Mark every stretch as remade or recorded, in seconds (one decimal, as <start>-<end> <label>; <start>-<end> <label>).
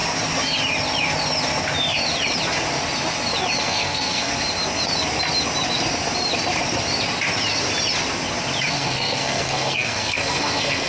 0.0-3.6 recorded; 3.6-4.3 remade; 4.3-8.7 recorded; 8.7-10.9 remade